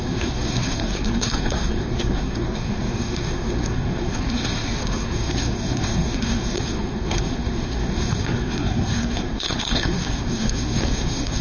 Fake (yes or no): yes